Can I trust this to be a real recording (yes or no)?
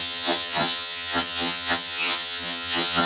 no